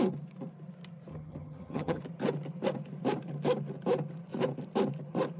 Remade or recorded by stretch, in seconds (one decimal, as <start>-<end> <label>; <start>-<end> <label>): 0.0-1.1 recorded; 1.1-2.0 remade; 2.0-5.4 recorded